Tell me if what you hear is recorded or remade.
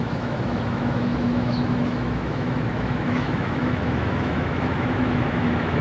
remade